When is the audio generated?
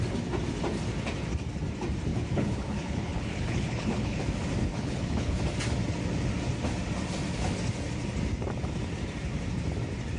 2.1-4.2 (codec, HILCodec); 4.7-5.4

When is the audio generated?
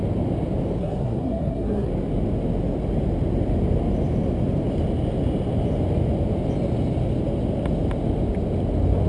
0.8-1.9 (codec, SNAC)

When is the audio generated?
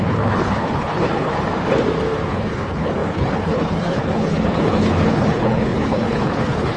0.0-1.3 (codec, HILCodec); 2.3-6.8